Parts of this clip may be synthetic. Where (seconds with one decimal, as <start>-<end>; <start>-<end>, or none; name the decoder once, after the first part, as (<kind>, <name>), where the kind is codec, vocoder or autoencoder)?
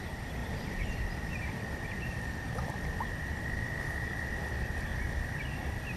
0.0-4.9 (vocoder, BigVGAN v2)